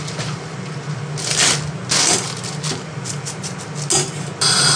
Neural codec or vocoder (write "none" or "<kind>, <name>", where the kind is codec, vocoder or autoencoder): none